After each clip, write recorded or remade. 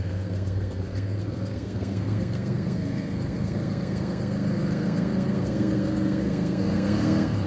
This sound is remade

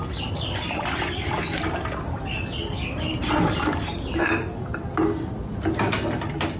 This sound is recorded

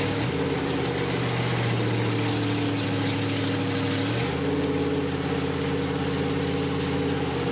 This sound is recorded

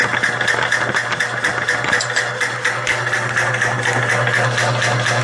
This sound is recorded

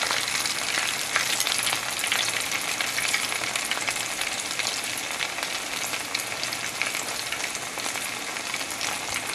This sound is recorded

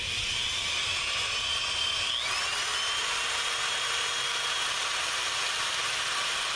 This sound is recorded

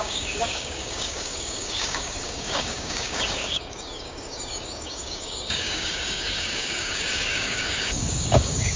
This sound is remade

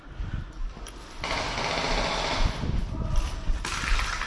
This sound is recorded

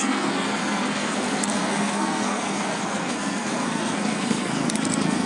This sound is remade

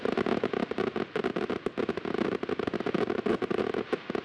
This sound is recorded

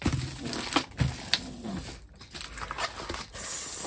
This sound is recorded